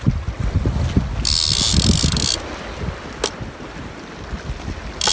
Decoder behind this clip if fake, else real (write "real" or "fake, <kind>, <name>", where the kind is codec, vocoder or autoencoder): real